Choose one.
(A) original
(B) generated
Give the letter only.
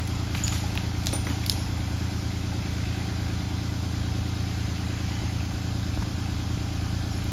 A